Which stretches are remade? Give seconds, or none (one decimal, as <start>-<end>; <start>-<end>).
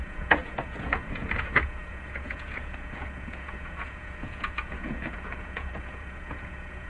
0.0-6.9